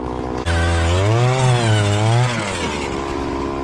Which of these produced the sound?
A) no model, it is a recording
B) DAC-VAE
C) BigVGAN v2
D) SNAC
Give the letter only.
A